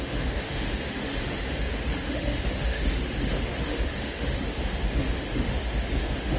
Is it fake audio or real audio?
fake